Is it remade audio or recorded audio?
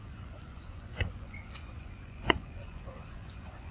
remade